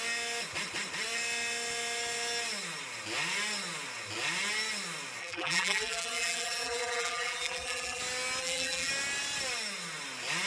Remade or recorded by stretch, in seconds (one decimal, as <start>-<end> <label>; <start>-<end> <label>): 0.0-5.2 recorded; 5.2-8.0 remade; 8.0-8.4 recorded; 8.4-8.9 remade; 8.9-10.5 recorded